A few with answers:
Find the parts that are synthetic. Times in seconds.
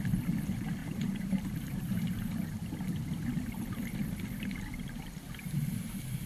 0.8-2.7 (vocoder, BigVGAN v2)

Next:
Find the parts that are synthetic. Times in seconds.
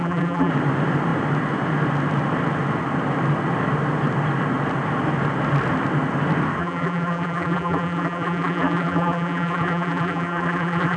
0.0-0.5 (vocoder, BigVGAN v2); 6.6-11.0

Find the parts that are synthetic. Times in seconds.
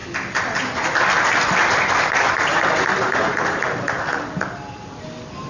2.0-2.9 (vocoder, BigVGAN v2); 3.9-5.5